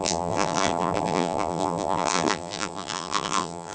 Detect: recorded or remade remade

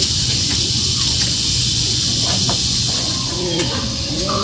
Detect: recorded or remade remade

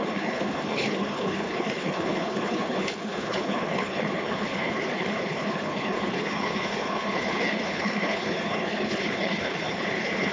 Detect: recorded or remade remade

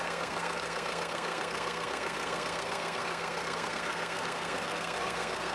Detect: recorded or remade remade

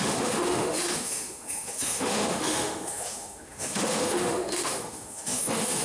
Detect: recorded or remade remade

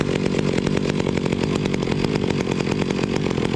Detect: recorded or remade recorded